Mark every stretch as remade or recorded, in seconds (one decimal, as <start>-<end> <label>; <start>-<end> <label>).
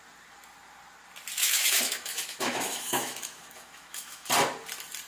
0.0-1.4 recorded; 1.4-4.3 remade; 4.3-5.1 recorded